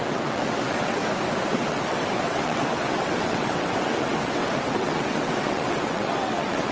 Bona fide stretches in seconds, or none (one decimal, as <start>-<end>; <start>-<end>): 1.0-1.5